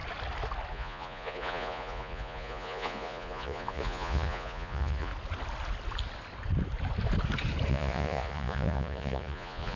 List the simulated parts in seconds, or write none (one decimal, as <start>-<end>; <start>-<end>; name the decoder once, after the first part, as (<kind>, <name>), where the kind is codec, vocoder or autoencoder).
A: 0.7-5.1 (vocoder, Vocos); 7.7-9.8